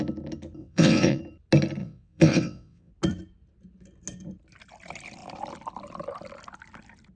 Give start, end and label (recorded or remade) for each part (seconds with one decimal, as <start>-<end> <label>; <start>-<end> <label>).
0.0-0.6 recorded; 0.6-1.2 remade; 1.2-1.8 recorded; 1.8-2.9 remade; 2.9-7.2 recorded